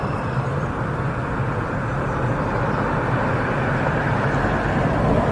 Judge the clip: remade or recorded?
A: recorded